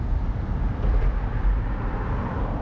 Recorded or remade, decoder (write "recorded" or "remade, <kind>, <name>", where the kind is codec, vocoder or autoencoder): recorded